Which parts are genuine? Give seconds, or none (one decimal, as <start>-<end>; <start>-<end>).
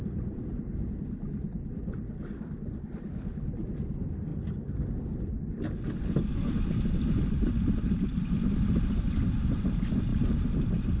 0.0-11.0